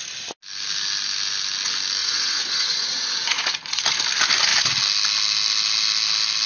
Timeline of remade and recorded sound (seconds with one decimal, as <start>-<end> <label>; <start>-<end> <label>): 0.0-2.0 recorded; 2.0-3.8 remade; 3.8-6.5 recorded